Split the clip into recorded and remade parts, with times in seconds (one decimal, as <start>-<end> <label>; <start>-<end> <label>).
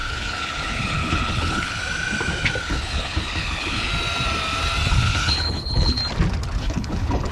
0.0-1.8 remade; 1.8-2.6 recorded; 2.6-3.9 remade; 3.9-4.9 recorded; 4.9-6.0 remade; 6.0-6.6 recorded; 6.6-7.3 remade